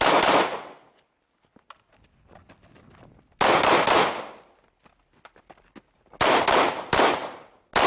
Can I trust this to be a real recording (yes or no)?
yes